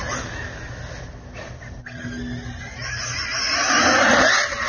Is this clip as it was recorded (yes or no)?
yes